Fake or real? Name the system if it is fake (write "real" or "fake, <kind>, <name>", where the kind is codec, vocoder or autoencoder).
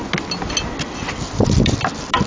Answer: real